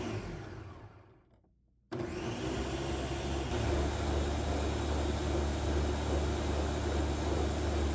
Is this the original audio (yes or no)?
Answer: yes